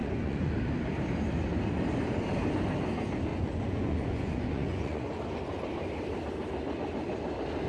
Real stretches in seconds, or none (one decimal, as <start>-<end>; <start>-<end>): 0.5-3.3; 5.2-7.7